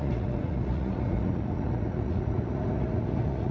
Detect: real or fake fake